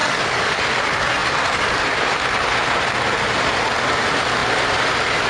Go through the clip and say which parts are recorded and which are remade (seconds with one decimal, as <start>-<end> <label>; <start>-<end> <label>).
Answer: 0.0-0.6 remade; 0.6-5.3 recorded